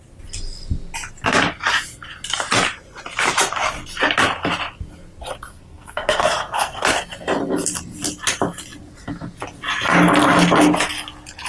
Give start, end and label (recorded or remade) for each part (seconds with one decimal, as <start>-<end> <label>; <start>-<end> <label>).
0.0-5.5 recorded; 5.5-6.8 remade; 6.8-11.5 recorded